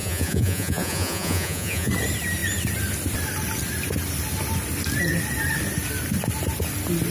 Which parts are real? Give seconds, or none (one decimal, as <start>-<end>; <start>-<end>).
1.9-7.1